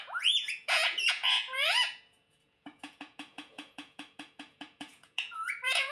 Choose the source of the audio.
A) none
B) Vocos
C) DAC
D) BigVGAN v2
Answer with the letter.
B